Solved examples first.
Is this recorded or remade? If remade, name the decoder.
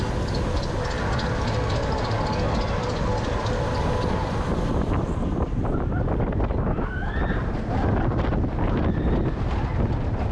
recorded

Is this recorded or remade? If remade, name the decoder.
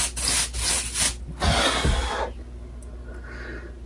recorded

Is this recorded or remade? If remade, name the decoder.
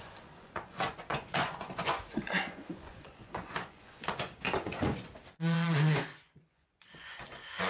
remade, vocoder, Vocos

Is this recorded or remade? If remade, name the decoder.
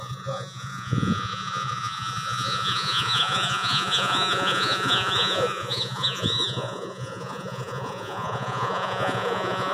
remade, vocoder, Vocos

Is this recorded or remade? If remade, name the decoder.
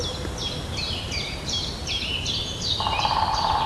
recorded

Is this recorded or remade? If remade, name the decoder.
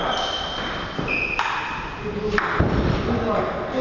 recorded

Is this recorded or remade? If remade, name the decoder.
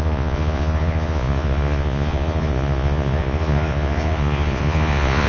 remade, vocoder, Vocos